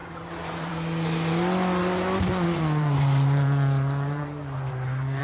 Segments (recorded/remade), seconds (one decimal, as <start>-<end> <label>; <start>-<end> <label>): 0.0-0.7 remade; 0.7-1.8 recorded; 1.8-5.2 remade